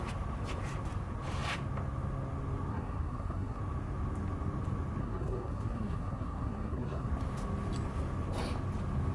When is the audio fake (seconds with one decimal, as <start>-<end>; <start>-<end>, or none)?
2.7-3.6; 5.0-7.1